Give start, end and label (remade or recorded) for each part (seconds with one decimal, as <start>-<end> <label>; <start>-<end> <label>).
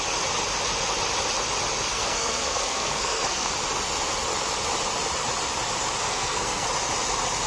0.0-1.9 recorded; 1.9-3.5 remade; 3.5-6.0 recorded; 6.0-6.7 remade; 6.7-7.5 recorded